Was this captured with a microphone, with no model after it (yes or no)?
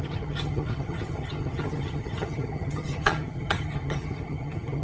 no